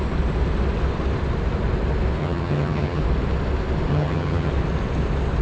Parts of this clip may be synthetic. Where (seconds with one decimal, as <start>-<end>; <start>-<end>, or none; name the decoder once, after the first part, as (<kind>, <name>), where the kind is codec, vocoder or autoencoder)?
2.2-3.0 (vocoder, HiFi-GAN); 3.9-4.5